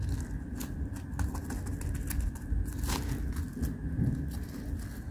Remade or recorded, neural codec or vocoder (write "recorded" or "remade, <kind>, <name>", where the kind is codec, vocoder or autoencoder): recorded